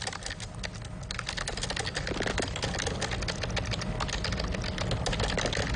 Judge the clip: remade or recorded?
recorded